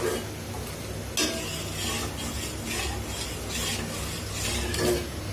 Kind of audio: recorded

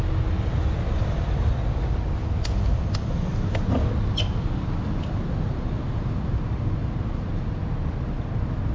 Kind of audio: recorded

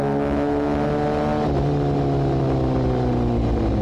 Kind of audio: recorded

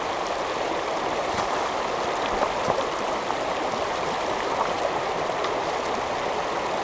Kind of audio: recorded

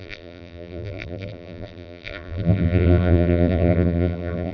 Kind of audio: remade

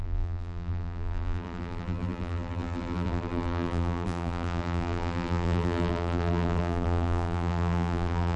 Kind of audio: remade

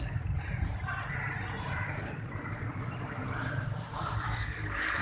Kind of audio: remade